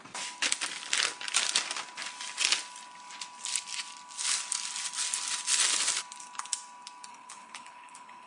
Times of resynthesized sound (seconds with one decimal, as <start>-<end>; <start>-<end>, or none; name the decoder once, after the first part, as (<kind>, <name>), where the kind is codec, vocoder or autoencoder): 7.1-8.3 (codec, HILCodec)